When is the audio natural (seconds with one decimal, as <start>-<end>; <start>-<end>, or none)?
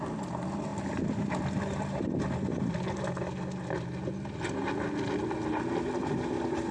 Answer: 0.0-6.7